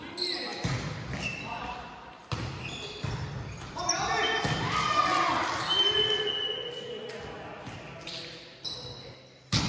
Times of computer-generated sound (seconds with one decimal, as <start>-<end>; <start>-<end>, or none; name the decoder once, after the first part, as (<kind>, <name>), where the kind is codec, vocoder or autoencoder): none